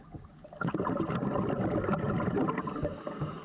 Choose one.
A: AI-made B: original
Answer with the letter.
B